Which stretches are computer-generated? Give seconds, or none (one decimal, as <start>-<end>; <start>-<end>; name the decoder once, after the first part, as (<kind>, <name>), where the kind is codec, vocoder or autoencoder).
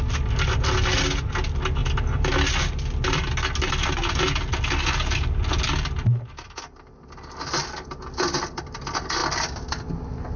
none